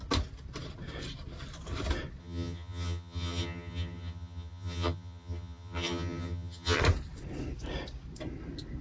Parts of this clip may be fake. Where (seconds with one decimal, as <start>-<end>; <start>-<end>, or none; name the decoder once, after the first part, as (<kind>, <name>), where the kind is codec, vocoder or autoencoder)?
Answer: 2.2-6.8 (vocoder, HiFi-GAN)